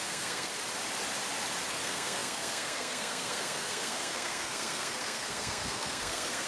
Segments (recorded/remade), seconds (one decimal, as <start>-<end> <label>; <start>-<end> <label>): 0.0-0.5 remade; 0.5-1.7 recorded; 1.7-6.5 remade